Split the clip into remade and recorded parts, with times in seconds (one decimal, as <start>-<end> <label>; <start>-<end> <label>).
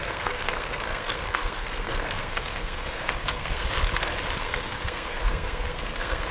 0.0-3.8 remade; 3.8-4.4 recorded; 4.4-6.3 remade